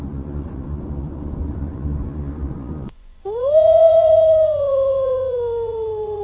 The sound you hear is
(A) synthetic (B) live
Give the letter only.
A